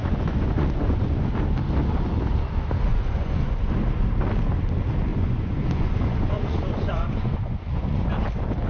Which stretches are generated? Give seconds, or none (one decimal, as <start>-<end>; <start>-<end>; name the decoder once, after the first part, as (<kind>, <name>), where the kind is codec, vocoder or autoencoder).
0.0-1.3 (vocoder, Vocos); 2.9-3.7; 5.1-8.1